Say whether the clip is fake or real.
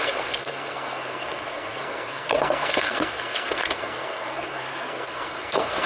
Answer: fake